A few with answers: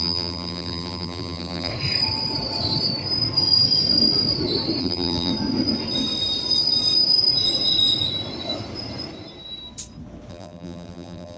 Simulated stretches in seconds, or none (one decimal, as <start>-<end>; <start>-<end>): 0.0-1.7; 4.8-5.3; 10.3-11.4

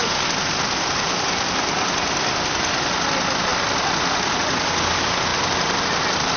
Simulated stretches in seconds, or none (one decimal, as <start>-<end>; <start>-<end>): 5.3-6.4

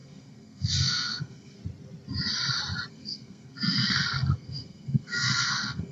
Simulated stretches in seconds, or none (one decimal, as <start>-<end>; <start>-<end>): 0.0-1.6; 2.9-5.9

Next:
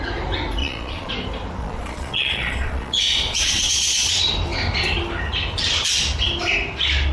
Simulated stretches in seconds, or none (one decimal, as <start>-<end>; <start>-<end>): 0.6-1.1; 1.6-4.1

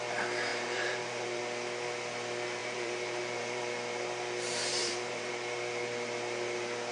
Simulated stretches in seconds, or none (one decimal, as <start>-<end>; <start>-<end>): 0.5-1.4; 2.6-3.6; 4.8-5.3

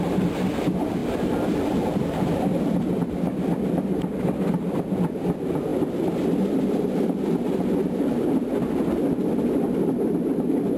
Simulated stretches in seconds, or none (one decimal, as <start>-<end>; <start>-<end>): none